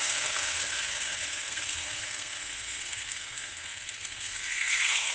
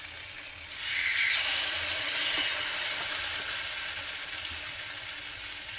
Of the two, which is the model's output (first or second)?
first